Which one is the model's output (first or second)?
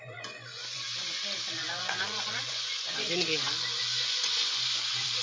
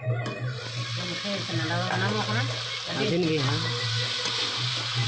first